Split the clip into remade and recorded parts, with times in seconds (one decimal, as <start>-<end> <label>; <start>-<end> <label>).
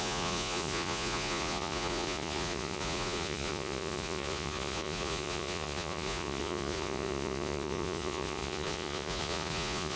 0.0-10.0 remade